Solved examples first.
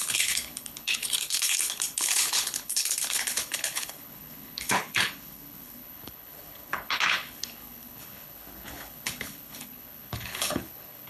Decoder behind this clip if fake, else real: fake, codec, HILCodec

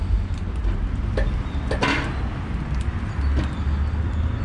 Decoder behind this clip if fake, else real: real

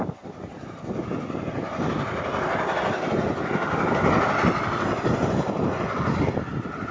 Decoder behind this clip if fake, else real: real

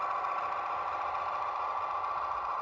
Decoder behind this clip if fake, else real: real